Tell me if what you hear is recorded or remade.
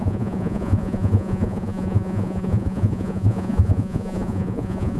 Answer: remade